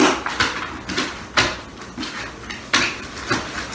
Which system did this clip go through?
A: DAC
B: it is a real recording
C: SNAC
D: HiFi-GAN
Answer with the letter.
B